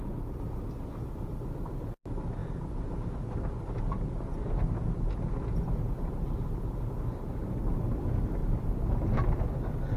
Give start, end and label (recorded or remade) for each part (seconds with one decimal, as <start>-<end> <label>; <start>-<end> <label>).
0.0-8.4 recorded; 8.4-9.0 remade; 9.0-10.0 recorded